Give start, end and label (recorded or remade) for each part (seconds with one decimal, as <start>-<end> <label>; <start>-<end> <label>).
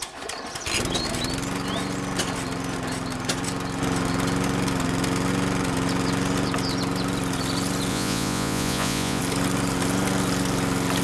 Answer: 0.0-7.9 recorded; 7.9-9.2 remade; 9.2-11.0 recorded